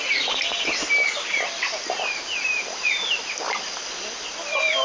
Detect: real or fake real